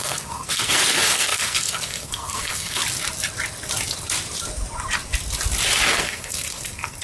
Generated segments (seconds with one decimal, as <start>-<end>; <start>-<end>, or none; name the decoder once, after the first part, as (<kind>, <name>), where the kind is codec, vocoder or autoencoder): 0.0-2.8 (codec, SNAC); 5.9-7.0